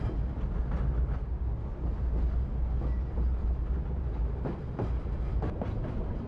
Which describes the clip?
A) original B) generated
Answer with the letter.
A